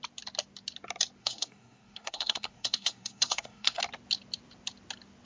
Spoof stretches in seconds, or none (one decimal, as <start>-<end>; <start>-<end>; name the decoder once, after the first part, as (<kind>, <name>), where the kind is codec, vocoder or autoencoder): 1.2-3.8 (codec, SNAC)